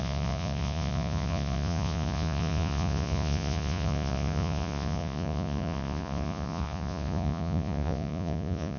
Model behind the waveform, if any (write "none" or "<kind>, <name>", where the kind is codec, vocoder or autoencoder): vocoder, Vocos